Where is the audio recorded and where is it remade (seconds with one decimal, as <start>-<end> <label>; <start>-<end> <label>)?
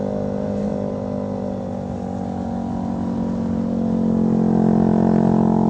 0.0-5.7 recorded